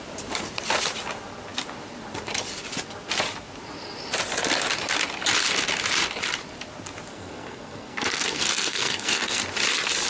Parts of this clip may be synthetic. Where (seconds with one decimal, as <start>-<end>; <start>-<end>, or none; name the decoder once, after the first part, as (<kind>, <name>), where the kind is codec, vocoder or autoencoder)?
7.1-9.4 (codec, SNAC)